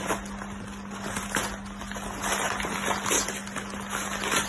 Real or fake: real